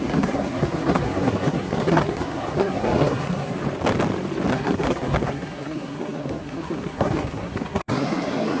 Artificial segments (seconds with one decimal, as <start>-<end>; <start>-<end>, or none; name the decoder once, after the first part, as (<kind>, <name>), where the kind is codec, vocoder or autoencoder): 0.0-3.6 (codec, SNAC); 4.5-8.6